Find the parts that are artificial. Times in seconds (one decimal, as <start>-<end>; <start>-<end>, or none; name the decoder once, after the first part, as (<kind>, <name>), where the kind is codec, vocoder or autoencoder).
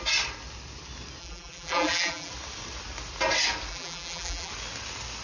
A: 1.2-2.3 (vocoder, BigVGAN v2); 3.7-4.5